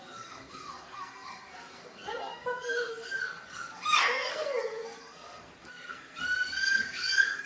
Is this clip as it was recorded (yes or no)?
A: no